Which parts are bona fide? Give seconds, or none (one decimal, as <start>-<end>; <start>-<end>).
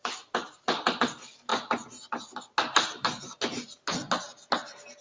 0.0-5.0